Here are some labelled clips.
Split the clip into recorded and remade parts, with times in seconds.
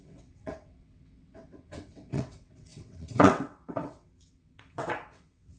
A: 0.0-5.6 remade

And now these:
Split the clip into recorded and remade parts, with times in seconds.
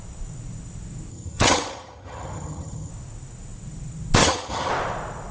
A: 0.0-1.1 recorded; 1.1-2.9 remade; 2.9-4.2 recorded; 4.2-4.7 remade; 4.7-5.3 recorded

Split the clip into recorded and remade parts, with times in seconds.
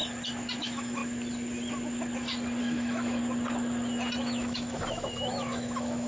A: 0.0-0.6 recorded; 0.6-1.0 remade; 1.0-2.6 recorded; 2.6-3.2 remade; 3.2-4.2 recorded; 4.2-6.1 remade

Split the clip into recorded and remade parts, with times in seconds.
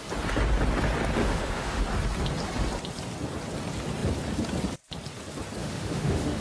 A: 0.0-1.2 recorded; 1.2-1.8 remade; 1.8-5.6 recorded; 5.6-6.4 remade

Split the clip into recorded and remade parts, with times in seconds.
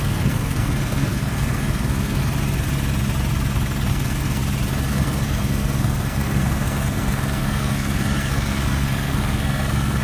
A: 0.0-2.2 remade; 2.2-3.9 recorded; 3.9-4.4 remade; 4.4-4.9 recorded; 4.9-10.0 remade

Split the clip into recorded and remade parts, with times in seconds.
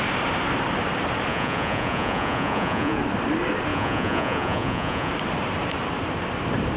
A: 0.0-1.3 recorded; 1.3-3.0 remade; 3.0-3.7 recorded; 3.7-5.1 remade; 5.1-6.8 recorded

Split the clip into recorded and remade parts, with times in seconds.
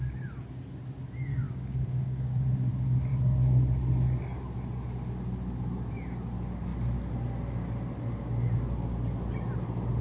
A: 0.0-1.3 recorded; 1.3-2.3 remade; 2.3-10.0 recorded